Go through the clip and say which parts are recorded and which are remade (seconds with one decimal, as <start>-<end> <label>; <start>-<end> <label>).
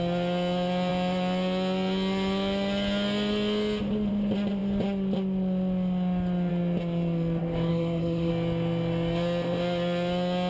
0.0-7.7 recorded; 7.7-8.3 remade; 8.3-10.5 recorded